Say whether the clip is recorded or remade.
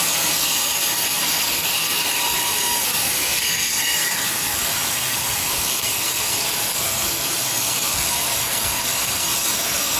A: remade